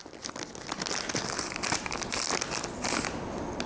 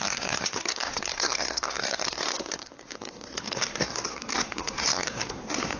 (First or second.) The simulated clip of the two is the second